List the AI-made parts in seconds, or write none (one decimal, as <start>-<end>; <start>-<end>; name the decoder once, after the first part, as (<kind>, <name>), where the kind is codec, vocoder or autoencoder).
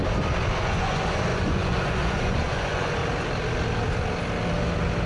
0.6-3.0 (vocoder, Vocos)